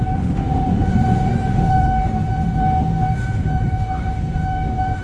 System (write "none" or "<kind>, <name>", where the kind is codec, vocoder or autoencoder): autoencoder, DAC-VAE